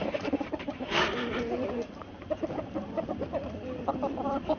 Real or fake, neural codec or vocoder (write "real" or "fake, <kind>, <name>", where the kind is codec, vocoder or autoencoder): fake, vocoder, BigVGAN v2